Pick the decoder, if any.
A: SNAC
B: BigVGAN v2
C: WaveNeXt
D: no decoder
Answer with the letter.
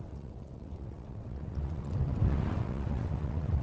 C